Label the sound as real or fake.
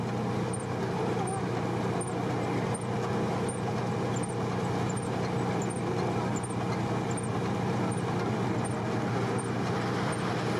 real